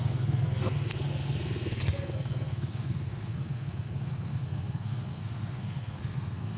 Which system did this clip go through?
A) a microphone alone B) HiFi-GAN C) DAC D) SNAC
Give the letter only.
D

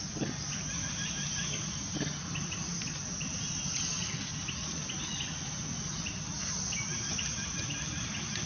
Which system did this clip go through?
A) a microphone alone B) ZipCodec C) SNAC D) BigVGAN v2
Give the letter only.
D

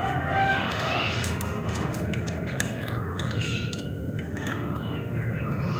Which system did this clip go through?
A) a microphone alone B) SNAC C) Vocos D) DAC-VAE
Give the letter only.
D